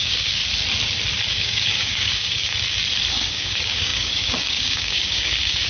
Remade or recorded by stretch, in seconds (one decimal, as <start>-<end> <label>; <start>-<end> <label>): 0.0-0.4 remade; 0.4-1.3 recorded; 1.3-2.5 remade; 2.5-3.1 recorded; 3.1-5.7 remade